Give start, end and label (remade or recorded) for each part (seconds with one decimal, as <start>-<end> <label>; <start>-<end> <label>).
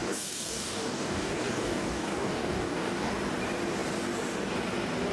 0.0-3.1 remade; 3.1-5.1 recorded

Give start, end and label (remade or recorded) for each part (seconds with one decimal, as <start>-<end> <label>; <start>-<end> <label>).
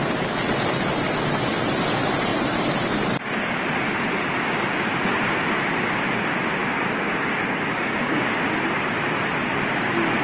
0.0-6.6 recorded; 6.6-8.4 remade; 8.4-10.2 recorded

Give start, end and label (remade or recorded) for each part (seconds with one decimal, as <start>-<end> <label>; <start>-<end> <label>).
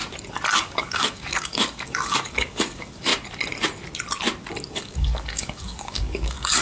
0.0-0.6 recorded; 0.6-3.1 remade; 3.1-4.7 recorded; 4.7-6.6 remade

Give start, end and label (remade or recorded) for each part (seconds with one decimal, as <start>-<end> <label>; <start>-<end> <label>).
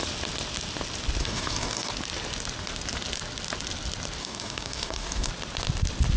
0.0-1.2 recorded; 1.2-1.9 remade; 1.9-4.2 recorded; 4.2-5.3 remade; 5.3-6.2 recorded